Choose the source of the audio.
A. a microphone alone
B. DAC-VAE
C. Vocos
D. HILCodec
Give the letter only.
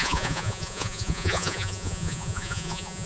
C